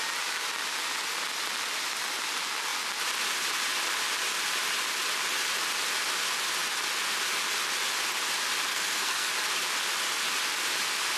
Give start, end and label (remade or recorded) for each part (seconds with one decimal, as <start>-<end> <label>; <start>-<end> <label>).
0.0-8.7 recorded; 8.7-9.3 remade; 9.3-11.2 recorded